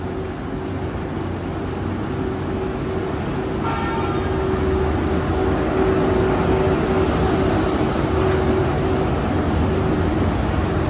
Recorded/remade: recorded